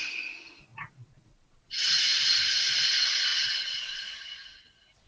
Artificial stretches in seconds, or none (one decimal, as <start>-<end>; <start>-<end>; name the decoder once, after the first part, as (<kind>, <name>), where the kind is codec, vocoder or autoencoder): 0.7-2.2 (vocoder, Vocos); 3.3-4.0